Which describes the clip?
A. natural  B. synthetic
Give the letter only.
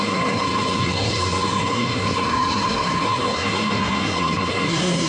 B